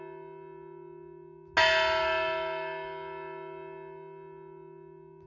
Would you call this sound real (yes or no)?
yes